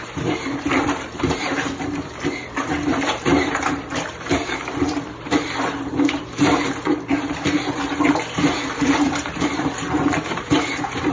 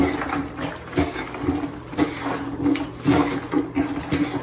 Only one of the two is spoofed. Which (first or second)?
first